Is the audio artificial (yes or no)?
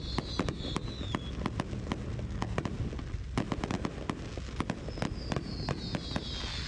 no